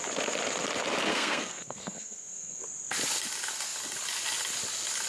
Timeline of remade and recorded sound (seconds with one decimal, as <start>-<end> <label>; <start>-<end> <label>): 0.0-1.1 recorded; 1.1-2.6 remade; 2.6-5.1 recorded